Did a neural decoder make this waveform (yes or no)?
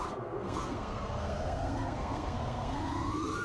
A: yes